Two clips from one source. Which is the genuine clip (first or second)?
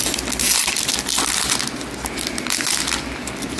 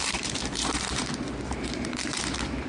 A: first